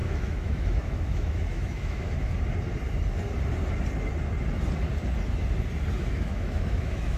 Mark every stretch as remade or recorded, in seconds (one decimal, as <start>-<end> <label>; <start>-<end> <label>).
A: 0.0-2.3 remade; 2.3-6.0 recorded; 6.0-7.2 remade

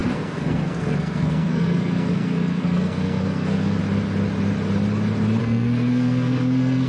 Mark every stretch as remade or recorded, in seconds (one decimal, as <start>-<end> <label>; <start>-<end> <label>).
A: 0.0-3.8 remade; 3.8-5.4 recorded; 5.4-6.9 remade

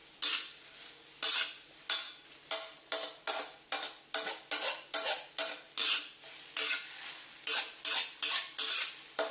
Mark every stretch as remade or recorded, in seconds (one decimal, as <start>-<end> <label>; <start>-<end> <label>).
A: 0.0-9.3 recorded

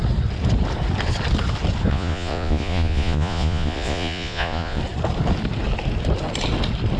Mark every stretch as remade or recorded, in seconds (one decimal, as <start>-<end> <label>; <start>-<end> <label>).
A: 0.0-1.9 recorded; 1.9-4.8 remade; 4.8-7.0 recorded

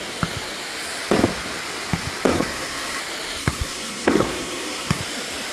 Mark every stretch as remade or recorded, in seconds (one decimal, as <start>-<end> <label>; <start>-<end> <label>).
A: 0.0-2.3 recorded; 2.3-3.0 remade; 3.0-3.4 recorded; 3.4-5.0 remade; 5.0-5.5 recorded